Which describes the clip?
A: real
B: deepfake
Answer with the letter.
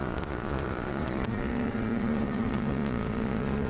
B